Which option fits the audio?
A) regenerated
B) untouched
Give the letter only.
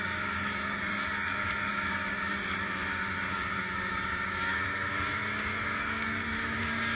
A